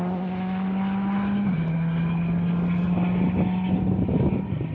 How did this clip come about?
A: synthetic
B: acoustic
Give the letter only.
B